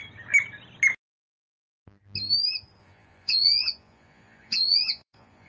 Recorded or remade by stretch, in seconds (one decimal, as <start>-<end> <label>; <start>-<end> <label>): 0.0-2.8 recorded; 2.8-5.5 remade